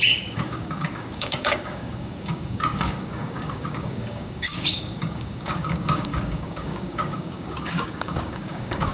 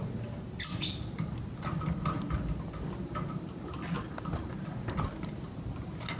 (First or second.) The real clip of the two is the second